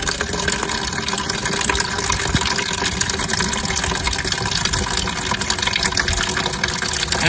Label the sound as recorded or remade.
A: recorded